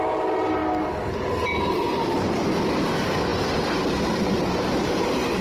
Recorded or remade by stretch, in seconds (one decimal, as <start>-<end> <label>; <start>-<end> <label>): 0.0-5.4 recorded